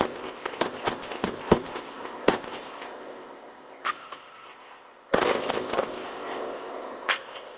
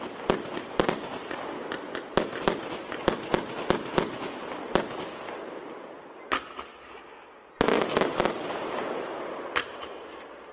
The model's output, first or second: first